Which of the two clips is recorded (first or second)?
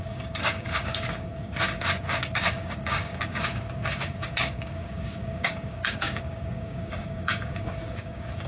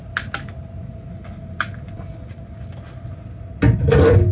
second